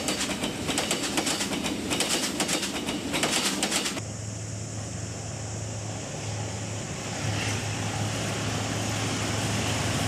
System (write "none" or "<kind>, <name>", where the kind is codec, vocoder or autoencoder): none